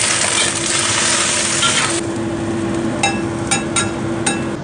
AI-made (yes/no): no